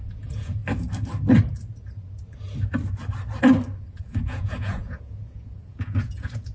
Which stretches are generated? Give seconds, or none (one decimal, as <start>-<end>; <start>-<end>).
0.0-0.6; 3.8-6.5